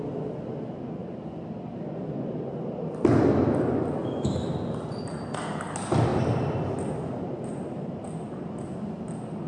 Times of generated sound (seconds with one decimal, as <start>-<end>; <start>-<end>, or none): 4.0-4.5